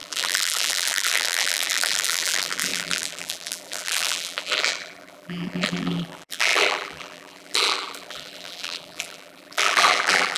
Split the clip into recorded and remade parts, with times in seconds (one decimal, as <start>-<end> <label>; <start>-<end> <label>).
0.0-10.4 remade